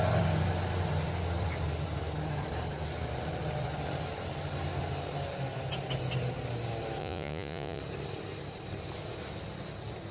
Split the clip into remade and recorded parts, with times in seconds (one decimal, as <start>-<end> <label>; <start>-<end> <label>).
0.0-7.0 recorded; 7.0-7.8 remade; 7.8-10.1 recorded

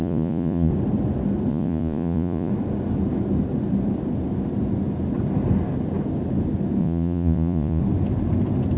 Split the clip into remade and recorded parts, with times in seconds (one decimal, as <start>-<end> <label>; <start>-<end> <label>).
0.0-0.7 remade; 0.7-1.5 recorded; 1.5-2.5 remade; 2.5-6.8 recorded; 6.8-7.8 remade; 7.8-8.8 recorded

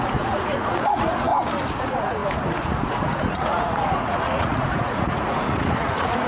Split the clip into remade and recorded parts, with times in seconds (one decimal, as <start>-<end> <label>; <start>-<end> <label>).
0.0-1.3 remade; 1.3-1.8 recorded; 1.8-6.3 remade

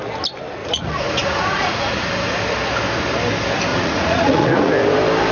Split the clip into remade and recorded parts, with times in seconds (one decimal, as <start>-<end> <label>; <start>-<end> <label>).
0.0-0.6 recorded; 0.6-2.1 remade; 2.1-3.7 recorded; 3.7-4.7 remade; 4.7-5.3 recorded

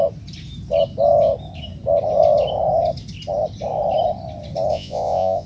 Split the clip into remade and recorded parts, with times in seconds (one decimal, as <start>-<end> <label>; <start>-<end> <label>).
0.0-4.7 recorded; 4.7-5.5 remade

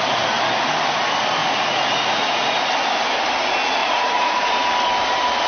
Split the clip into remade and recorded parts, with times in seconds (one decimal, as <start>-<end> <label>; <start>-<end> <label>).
0.0-1.4 recorded; 1.4-2.6 remade; 2.6-3.8 recorded; 3.8-4.5 remade; 4.5-5.5 recorded